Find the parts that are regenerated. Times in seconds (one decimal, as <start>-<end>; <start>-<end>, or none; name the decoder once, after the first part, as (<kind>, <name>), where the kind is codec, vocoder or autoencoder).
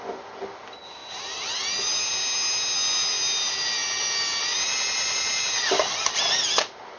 none